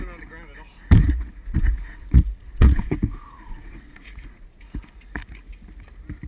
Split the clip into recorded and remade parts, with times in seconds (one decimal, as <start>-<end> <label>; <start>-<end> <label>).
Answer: 0.0-1.0 recorded; 1.0-4.8 remade; 4.8-6.3 recorded